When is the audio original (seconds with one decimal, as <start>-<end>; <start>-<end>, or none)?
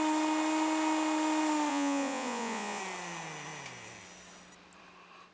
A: 0.0-1.7; 2.8-5.3